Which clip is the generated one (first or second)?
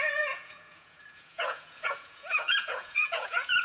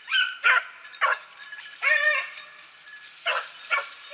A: first